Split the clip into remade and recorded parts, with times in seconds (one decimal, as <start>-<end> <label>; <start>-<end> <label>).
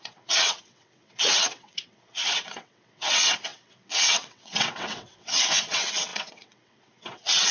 0.0-7.5 remade